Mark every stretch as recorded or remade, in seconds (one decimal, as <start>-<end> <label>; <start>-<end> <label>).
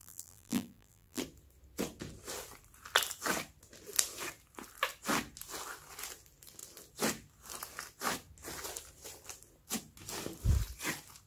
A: 0.0-1.2 remade; 1.2-11.3 recorded